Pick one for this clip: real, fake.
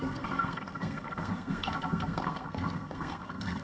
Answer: fake